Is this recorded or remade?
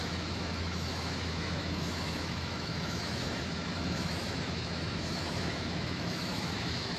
remade